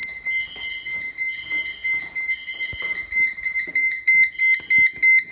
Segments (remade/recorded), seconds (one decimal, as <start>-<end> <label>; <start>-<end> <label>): 0.0-5.3 recorded